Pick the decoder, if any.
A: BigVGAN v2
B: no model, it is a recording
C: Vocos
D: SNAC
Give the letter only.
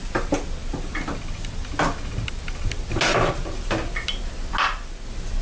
B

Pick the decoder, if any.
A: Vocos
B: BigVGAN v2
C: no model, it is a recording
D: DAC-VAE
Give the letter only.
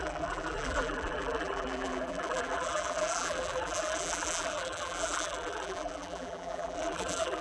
B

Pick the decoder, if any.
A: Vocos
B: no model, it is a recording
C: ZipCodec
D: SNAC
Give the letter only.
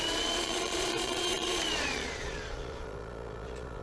A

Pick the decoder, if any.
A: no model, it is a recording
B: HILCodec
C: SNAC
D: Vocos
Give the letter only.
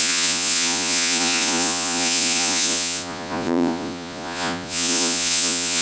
D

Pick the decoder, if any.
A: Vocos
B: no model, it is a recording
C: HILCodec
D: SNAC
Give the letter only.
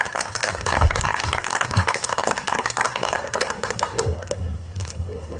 D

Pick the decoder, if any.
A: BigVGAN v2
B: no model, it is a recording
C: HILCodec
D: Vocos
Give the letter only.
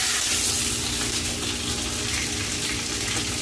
B